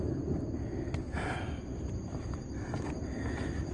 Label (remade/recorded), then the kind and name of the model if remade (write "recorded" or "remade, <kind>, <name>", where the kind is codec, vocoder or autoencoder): recorded